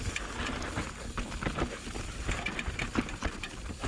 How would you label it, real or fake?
real